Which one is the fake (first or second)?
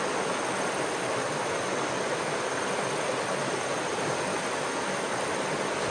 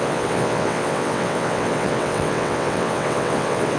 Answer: second